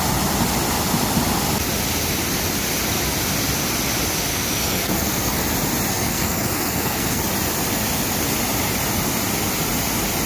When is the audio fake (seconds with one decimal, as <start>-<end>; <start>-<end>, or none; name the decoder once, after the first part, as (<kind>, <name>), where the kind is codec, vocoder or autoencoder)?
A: 4.3-5.4 (codec, SNAC); 5.9-7.2